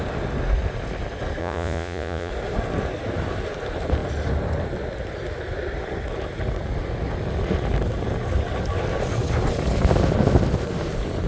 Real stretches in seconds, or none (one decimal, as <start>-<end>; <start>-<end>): 0.0-1.4; 2.3-11.3